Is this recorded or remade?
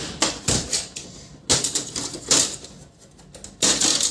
recorded